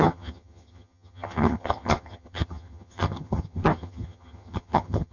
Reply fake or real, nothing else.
fake